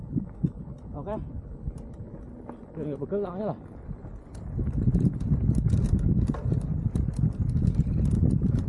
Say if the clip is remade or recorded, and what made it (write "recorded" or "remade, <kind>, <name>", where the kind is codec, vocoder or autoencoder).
recorded